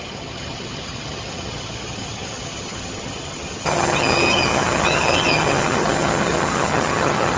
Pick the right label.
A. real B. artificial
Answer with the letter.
B